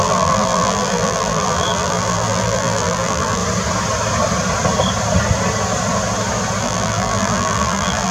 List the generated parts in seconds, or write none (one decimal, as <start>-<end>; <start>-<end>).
0.0-3.4; 6.6-8.1